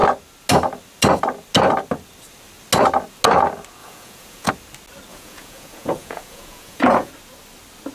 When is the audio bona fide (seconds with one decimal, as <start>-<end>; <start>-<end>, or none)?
0.0-3.8; 4.5-5.1; 7.1-7.9